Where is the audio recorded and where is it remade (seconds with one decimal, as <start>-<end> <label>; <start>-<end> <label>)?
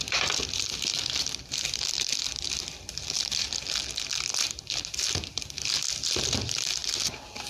0.0-2.3 recorded; 2.3-4.2 remade; 4.2-7.5 recorded